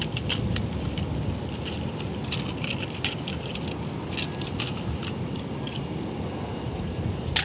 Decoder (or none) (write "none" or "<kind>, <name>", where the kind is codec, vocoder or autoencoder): none